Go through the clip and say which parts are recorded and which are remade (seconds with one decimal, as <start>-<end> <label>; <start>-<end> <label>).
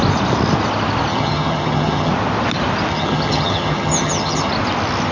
0.0-1.1 recorded; 1.1-2.1 remade; 2.1-2.9 recorded; 2.9-4.5 remade; 4.5-5.1 recorded